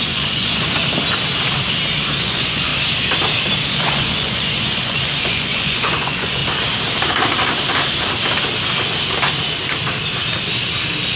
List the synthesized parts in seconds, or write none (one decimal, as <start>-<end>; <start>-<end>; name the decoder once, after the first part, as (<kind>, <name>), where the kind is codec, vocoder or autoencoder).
0.0-0.8 (vocoder, Vocos); 2.2-2.7; 3.7-6.4